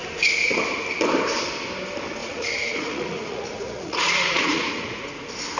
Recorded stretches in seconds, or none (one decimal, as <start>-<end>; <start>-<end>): 0.0-2.2; 5.1-5.6

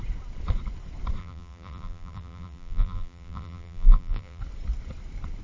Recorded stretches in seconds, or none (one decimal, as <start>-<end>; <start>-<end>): 0.0-1.2; 4.4-5.4